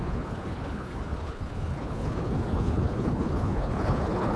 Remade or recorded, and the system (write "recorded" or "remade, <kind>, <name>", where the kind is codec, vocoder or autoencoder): remade, codec, HILCodec